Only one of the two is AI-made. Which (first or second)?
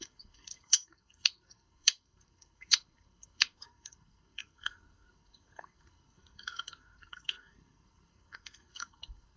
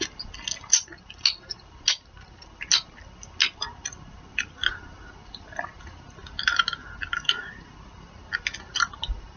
first